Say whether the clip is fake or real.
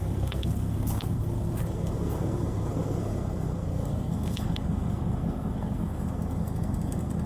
fake